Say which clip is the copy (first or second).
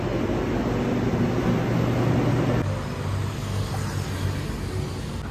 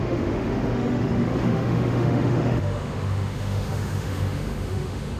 second